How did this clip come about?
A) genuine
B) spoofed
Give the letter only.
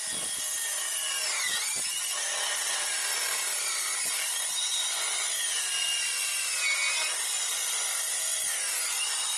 A